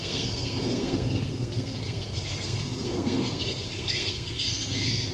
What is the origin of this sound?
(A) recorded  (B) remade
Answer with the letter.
B